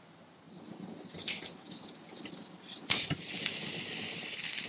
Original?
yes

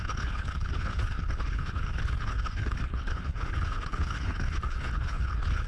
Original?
no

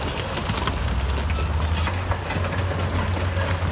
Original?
yes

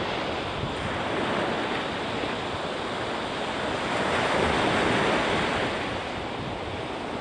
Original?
yes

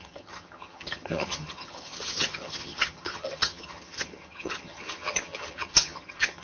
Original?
no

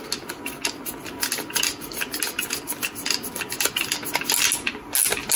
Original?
yes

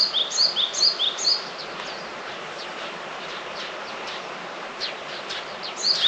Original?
yes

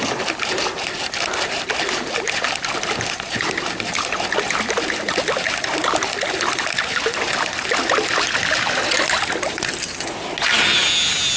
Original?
yes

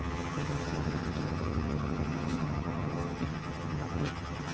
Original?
no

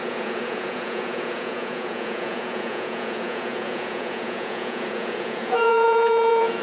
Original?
no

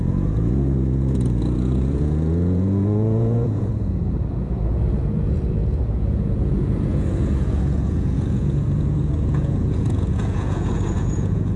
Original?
no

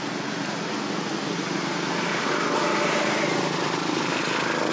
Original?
yes